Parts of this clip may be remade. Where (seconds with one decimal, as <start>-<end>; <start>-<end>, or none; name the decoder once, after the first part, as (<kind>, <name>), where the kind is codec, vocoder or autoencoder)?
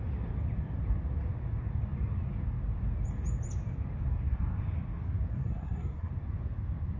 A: 5.3-6.1 (codec, SNAC)